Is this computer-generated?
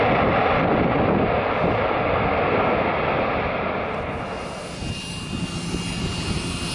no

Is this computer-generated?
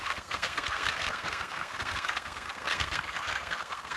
yes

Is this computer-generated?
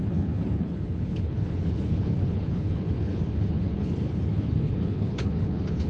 yes